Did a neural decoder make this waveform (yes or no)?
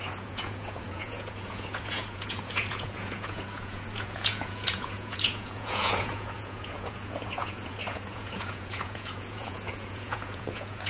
yes